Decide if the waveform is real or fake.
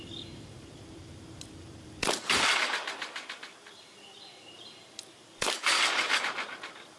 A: fake